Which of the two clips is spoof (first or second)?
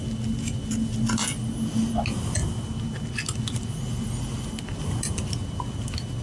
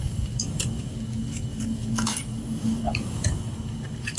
second